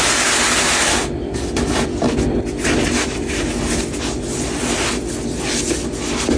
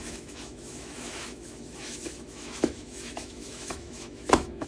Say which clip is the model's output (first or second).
second